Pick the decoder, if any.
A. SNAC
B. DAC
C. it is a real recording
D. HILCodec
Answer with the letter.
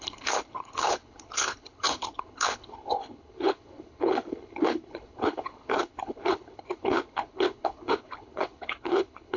D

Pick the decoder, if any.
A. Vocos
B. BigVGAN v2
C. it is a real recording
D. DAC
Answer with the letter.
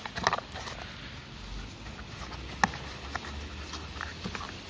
C